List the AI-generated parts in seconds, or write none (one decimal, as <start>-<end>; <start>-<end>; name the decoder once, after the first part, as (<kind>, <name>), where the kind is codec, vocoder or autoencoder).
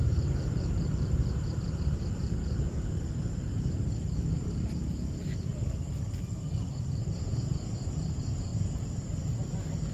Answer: 0.0-5.5 (vocoder, BigVGAN v2); 6.7-9.9